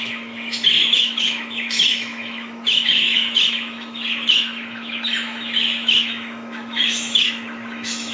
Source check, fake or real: fake